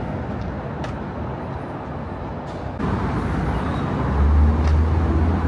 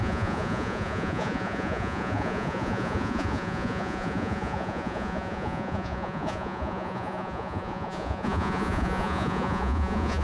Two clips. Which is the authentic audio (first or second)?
first